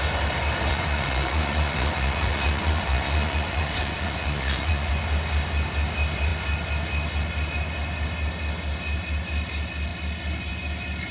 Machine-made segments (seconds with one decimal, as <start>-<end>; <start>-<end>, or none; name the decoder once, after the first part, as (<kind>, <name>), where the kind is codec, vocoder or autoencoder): 0.7-4.9 (vocoder, Vocos)